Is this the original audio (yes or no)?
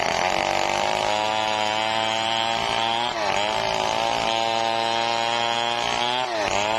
yes